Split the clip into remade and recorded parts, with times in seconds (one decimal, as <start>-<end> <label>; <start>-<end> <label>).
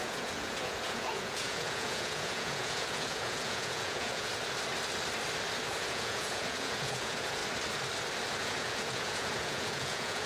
0.0-4.3 remade; 4.3-5.7 recorded; 5.7-7.4 remade; 7.4-8.4 recorded; 8.4-10.3 remade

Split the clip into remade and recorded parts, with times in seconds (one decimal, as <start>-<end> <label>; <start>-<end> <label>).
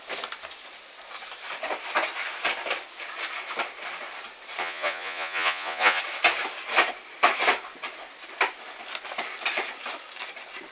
0.0-4.6 recorded; 4.6-6.0 remade; 6.0-10.7 recorded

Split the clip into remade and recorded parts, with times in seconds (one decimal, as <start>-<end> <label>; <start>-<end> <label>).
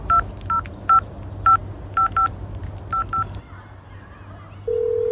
0.0-5.1 recorded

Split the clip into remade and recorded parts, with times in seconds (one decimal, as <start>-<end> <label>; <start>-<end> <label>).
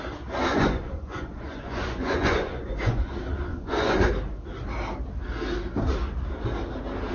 0.0-0.5 recorded; 0.5-3.1 remade; 3.1-3.5 recorded; 3.5-4.1 remade; 4.1-7.1 recorded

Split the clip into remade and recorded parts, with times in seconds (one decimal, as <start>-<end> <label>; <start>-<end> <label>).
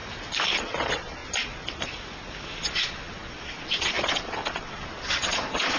0.0-0.6 recorded; 0.6-1.2 remade; 1.2-2.6 recorded; 2.6-5.8 remade